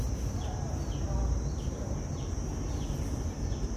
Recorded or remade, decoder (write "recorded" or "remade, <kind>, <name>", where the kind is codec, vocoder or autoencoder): recorded